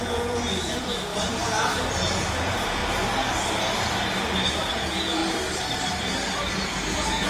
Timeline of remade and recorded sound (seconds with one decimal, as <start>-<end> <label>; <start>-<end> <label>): 0.0-1.1 remade; 1.1-2.0 recorded; 2.0-2.8 remade; 2.8-4.7 recorded; 4.7-5.2 remade; 5.2-6.5 recorded; 6.5-7.3 remade